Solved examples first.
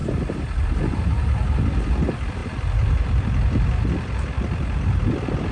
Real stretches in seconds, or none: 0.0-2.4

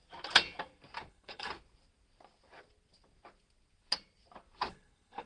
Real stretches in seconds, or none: 0.0-1.1; 1.5-4.7

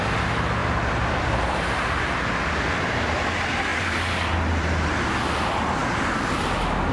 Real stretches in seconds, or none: 0.0-0.6; 2.0-3.7; 4.9-6.9

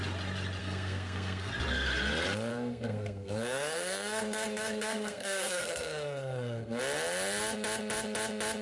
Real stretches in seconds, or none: 0.0-0.6; 1.5-2.5; 6.8-8.6

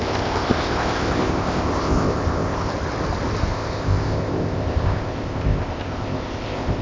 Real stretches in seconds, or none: 2.7-3.5

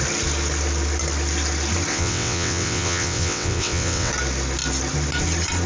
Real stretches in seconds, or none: 0.0-1.9; 4.1-5.7

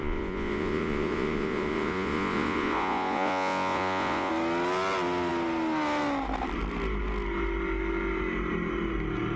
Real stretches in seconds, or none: 4.3-9.4

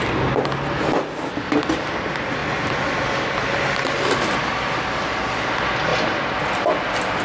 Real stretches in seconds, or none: 0.0-7.2